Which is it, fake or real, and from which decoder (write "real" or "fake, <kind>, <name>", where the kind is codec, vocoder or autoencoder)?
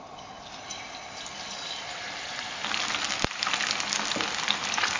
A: real